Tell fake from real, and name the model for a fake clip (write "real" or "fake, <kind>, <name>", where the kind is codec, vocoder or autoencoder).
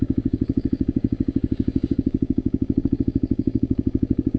fake, codec, DAC